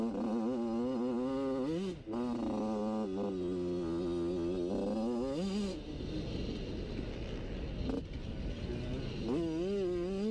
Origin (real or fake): real